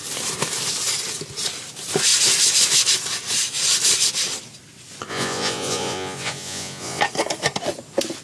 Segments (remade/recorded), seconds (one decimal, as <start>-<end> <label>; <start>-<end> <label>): 0.0-5.1 recorded; 5.1-7.0 remade; 7.0-8.2 recorded